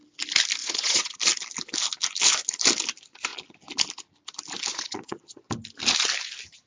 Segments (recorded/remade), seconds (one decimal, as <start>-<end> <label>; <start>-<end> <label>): 0.0-0.6 recorded; 0.6-1.2 remade; 1.2-4.7 recorded; 4.7-5.5 remade; 5.5-6.7 recorded